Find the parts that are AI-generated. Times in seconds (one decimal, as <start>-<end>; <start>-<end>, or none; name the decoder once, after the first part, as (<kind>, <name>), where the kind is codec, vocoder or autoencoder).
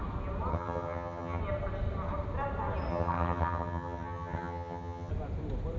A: 0.5-1.4 (vocoder, HiFi-GAN); 2.9-5.1